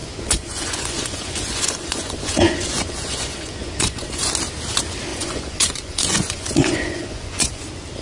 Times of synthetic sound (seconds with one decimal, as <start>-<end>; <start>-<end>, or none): 0.0-4.3; 5.1-7.6

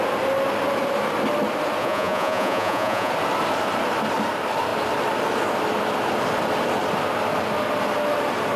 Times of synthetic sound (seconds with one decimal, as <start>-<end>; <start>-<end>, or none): 1.8-3.1

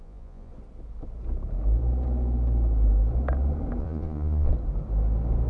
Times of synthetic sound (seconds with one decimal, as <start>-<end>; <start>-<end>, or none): 0.0-0.5; 3.8-4.5